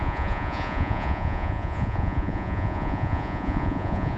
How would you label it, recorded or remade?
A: remade